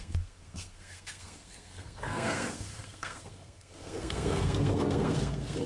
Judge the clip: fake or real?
fake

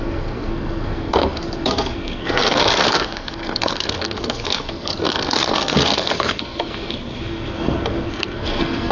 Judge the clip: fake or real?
fake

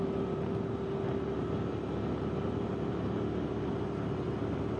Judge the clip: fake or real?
real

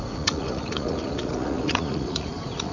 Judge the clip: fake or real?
fake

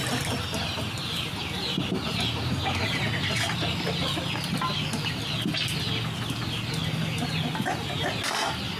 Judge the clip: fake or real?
real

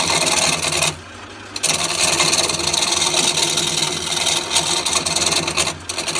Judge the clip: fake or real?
real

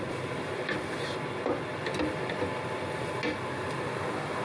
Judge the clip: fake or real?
real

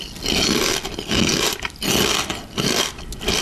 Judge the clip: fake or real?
real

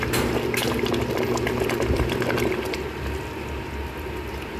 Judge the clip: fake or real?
real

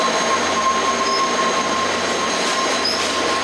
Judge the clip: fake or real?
fake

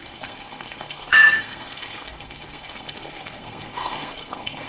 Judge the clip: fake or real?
fake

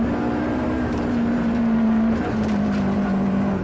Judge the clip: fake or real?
fake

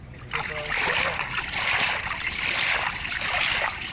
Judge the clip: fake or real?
real